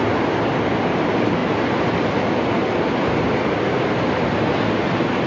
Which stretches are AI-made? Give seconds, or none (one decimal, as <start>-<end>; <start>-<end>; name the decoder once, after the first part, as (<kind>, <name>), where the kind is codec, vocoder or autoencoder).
none